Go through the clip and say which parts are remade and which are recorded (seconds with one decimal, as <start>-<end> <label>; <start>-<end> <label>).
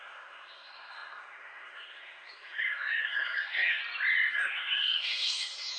0.0-3.8 remade; 3.8-4.3 recorded; 4.3-5.8 remade